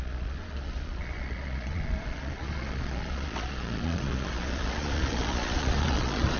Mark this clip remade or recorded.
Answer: remade